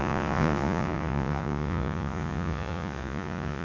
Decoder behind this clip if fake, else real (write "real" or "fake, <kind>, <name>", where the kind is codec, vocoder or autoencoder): fake, vocoder, Vocos